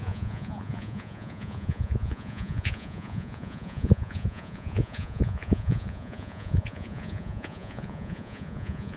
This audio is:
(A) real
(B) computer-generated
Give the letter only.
B